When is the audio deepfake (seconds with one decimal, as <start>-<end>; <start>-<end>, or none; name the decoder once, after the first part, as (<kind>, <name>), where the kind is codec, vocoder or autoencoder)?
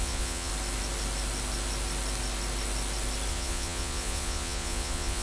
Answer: 0.0-0.5 (vocoder, Vocos); 3.3-5.2